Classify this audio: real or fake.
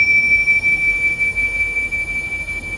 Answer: fake